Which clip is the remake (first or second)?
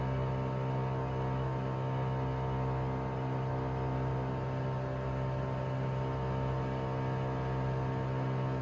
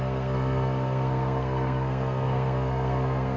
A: second